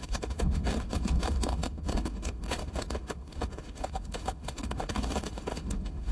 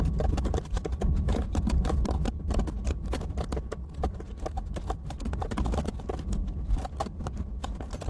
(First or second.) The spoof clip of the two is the first